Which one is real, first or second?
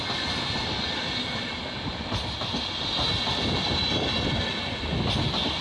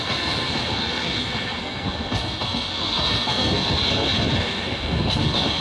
first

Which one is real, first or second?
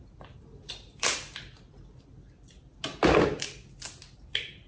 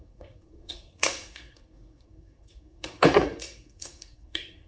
first